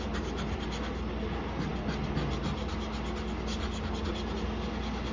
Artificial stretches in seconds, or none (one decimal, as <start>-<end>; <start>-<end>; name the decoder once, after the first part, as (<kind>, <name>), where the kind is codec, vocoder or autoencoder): none